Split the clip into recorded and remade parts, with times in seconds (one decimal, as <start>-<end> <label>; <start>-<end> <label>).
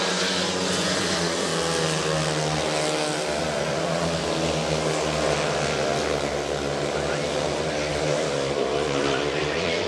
0.0-1.5 remade; 1.5-3.4 recorded; 3.4-4.2 remade; 4.2-7.5 recorded; 7.5-9.9 remade